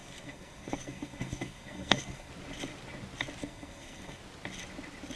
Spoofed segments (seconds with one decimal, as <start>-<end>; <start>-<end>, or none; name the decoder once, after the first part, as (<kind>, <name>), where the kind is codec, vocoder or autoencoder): 0.0-2.3 (codec, SNAC); 3.4-4.2